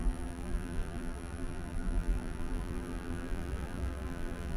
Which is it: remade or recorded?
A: remade